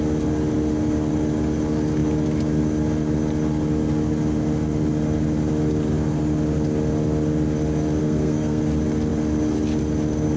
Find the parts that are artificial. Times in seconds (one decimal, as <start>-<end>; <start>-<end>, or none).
8.0-8.6